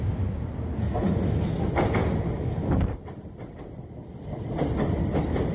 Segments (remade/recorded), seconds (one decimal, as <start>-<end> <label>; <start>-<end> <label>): 0.0-5.5 recorded